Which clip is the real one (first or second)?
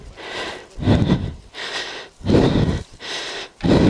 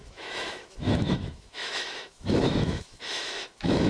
first